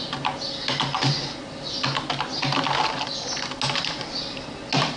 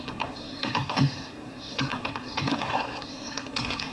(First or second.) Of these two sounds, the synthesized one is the second